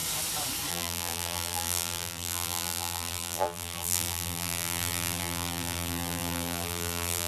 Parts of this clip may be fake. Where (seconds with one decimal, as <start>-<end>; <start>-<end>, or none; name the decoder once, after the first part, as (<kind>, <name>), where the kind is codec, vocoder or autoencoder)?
0.7-7.3 (vocoder, BigVGAN v2)